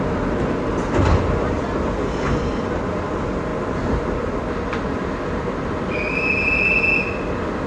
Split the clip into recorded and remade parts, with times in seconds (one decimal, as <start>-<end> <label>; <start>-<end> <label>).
0.0-7.7 recorded